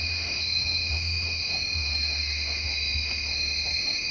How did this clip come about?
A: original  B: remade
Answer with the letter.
B